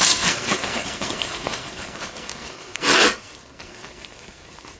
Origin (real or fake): fake